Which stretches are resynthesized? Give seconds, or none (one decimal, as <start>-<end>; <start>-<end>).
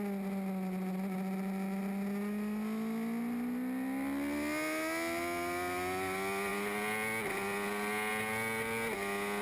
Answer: none